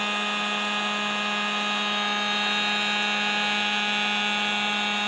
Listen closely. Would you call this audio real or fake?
real